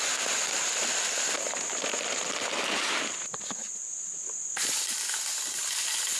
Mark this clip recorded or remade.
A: recorded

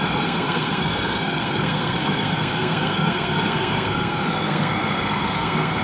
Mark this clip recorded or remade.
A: remade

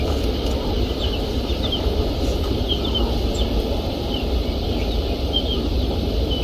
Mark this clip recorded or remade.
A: recorded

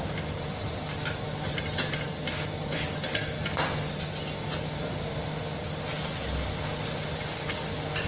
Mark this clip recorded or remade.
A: recorded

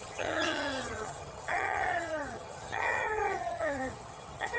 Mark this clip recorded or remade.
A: remade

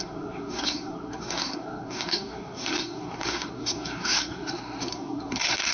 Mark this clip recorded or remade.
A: remade